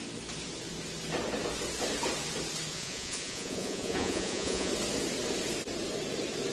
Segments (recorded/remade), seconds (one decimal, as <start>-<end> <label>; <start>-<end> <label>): 0.0-2.7 recorded; 2.7-4.7 remade; 4.7-6.5 recorded